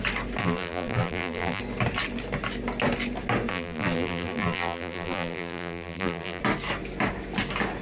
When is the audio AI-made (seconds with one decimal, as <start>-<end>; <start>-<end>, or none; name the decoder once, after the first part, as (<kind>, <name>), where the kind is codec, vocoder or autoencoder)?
0.4-1.6 (vocoder, BigVGAN v2); 3.5-6.4